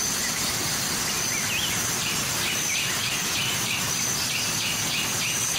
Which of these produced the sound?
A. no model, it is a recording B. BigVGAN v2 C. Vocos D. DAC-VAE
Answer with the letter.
A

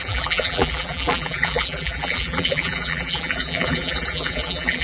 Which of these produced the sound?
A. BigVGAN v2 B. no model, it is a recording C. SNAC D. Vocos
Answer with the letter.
A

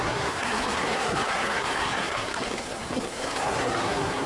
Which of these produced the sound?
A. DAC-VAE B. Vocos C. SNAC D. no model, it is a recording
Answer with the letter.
C